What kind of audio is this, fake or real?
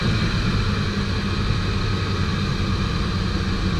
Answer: real